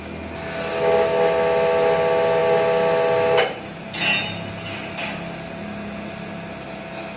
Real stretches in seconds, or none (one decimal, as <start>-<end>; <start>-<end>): 0.0-7.2